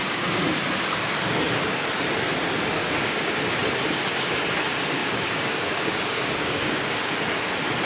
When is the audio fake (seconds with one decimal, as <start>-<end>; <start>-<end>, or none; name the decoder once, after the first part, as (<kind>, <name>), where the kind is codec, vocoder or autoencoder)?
0.0-0.5 (codec, DAC); 2.8-3.3; 5.0-7.1